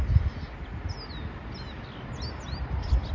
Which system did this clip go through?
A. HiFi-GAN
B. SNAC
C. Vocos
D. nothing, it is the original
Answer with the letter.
D